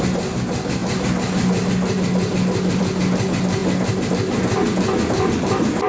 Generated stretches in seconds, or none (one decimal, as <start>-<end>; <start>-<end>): none